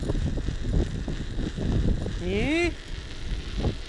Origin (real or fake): real